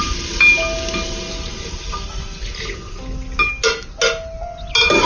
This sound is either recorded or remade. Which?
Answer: recorded